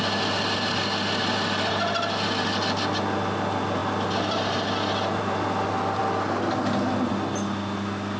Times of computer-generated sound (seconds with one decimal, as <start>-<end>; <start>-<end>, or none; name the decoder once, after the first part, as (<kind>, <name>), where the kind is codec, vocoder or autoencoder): none